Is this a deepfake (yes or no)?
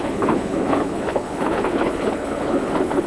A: yes